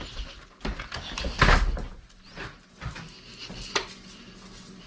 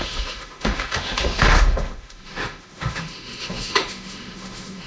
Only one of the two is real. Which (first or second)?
first